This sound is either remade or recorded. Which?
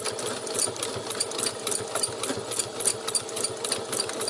recorded